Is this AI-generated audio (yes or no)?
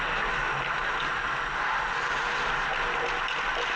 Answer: no